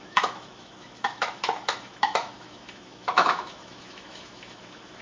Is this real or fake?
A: fake